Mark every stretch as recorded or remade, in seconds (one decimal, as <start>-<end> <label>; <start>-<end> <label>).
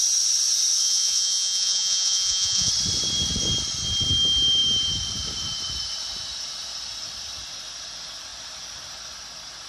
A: 0.0-0.8 recorded; 0.8-2.7 remade; 2.7-9.7 recorded